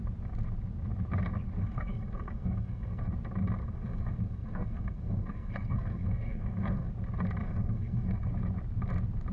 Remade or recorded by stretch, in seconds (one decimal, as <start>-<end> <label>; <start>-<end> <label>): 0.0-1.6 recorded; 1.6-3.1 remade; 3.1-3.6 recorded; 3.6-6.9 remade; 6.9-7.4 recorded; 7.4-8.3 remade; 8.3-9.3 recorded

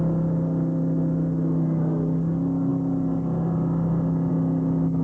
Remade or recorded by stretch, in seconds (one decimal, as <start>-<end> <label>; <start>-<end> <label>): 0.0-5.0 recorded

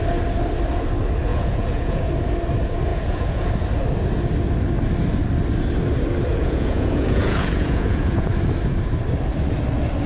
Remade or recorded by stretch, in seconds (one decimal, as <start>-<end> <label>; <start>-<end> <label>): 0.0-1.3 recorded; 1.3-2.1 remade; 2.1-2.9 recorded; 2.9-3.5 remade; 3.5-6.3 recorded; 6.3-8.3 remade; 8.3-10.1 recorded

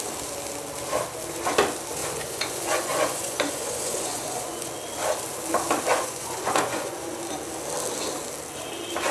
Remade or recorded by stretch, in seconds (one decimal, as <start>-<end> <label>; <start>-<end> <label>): 0.0-2.0 recorded; 2.0-4.7 remade; 4.7-5.9 recorded; 5.9-7.2 remade; 7.2-9.1 recorded

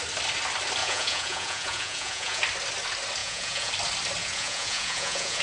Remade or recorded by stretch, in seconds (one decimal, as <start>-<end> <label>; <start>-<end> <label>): 0.0-0.8 recorded; 0.8-2.4 remade; 2.4-3.2 recorded; 3.2-3.7 remade; 3.7-4.2 recorded; 4.2-5.4 remade